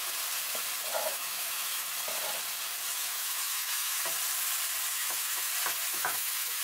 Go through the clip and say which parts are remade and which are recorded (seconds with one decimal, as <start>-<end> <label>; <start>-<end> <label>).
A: 0.0-1.1 recorded; 1.1-1.9 remade; 1.9-2.9 recorded; 2.9-4.0 remade; 4.0-4.9 recorded; 4.9-5.5 remade; 5.5-5.9 recorded; 5.9-6.6 remade